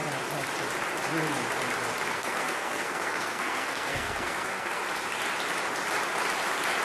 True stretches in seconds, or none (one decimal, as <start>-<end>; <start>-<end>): 0.0-2.1; 4.8-6.8